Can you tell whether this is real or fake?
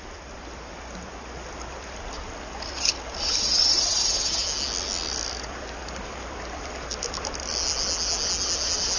real